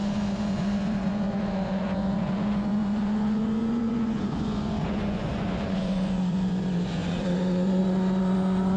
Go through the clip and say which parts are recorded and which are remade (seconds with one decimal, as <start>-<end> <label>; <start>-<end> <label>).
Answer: 0.0-8.8 remade